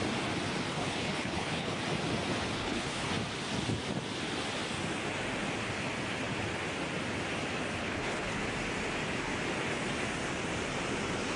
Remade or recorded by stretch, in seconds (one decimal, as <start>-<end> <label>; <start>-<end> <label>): 0.0-0.7 recorded; 0.7-1.8 remade; 1.8-2.6 recorded; 2.6-3.1 remade; 3.1-7.8 recorded; 7.8-8.4 remade; 8.4-11.4 recorded

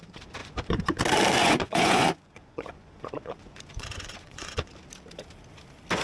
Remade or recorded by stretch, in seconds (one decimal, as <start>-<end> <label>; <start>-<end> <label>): 0.0-0.4 recorded; 0.4-1.0 remade; 1.0-1.4 recorded; 1.4-4.7 remade; 4.7-6.0 recorded

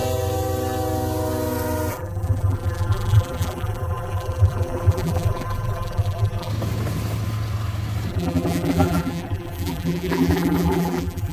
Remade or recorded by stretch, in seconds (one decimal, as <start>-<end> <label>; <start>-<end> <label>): 0.0-1.9 recorded; 1.9-6.5 remade; 6.5-8.1 recorded; 8.1-11.3 remade

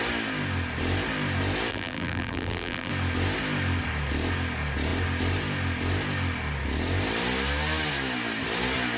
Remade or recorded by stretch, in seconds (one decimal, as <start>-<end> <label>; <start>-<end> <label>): 0.0-1.7 recorded; 1.7-2.9 remade; 2.9-9.0 recorded

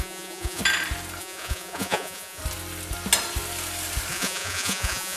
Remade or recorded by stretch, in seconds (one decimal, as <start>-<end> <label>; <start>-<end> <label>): 0.0-0.6 remade; 0.6-1.2 recorded; 1.2-2.4 remade; 2.4-4.1 recorded; 4.1-5.2 remade

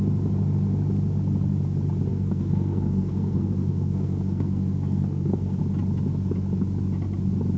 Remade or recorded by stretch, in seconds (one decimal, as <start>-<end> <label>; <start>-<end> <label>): 0.0-2.1 recorded; 2.1-5.6 remade; 5.6-7.6 recorded